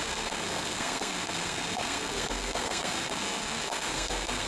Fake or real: fake